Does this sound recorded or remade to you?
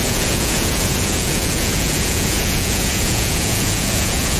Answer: remade